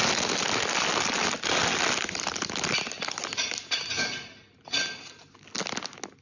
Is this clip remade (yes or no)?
no